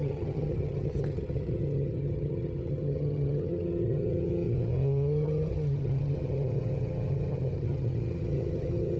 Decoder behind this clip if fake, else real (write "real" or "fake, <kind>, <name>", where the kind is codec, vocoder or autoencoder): fake, vocoder, HiFi-GAN